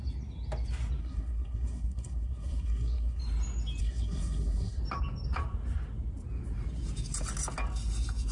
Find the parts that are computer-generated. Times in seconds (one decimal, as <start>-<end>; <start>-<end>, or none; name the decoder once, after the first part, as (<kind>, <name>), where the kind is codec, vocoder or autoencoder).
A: 1.0-3.2 (codec, SNAC); 3.8-4.8